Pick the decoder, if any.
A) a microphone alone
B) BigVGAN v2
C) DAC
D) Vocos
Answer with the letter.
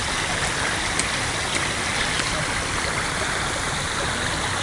A